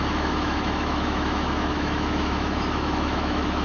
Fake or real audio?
fake